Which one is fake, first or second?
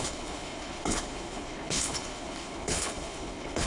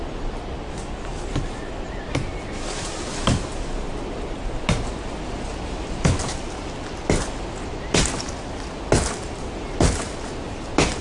first